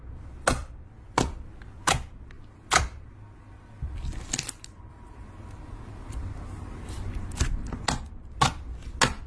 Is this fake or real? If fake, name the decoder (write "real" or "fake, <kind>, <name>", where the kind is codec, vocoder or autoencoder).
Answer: real